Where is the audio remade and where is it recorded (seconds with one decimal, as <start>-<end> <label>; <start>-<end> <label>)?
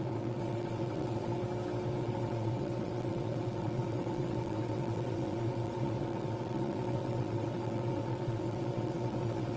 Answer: 0.0-1.4 remade; 1.4-2.0 recorded; 2.0-9.6 remade